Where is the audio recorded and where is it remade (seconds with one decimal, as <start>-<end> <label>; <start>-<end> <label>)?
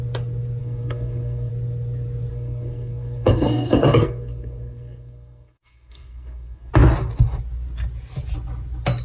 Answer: 0.0-0.6 recorded; 0.6-1.5 remade; 1.5-2.3 recorded; 2.3-6.7 remade; 6.7-9.0 recorded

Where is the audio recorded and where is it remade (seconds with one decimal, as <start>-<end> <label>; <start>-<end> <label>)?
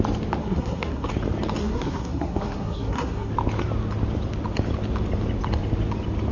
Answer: 0.0-0.4 recorded; 0.4-1.1 remade; 1.1-1.6 recorded; 1.6-3.3 remade; 3.3-6.3 recorded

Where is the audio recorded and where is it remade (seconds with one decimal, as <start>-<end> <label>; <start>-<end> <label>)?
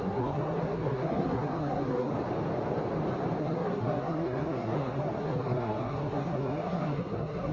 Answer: 0.0-2.1 remade; 2.1-3.4 recorded; 3.4-7.5 remade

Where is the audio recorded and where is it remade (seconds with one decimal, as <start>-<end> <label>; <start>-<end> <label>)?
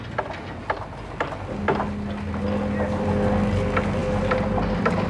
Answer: 0.0-5.1 recorded